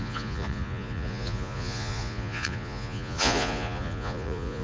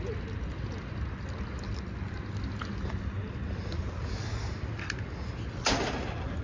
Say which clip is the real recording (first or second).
second